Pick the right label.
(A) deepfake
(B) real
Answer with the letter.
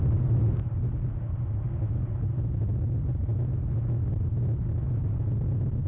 B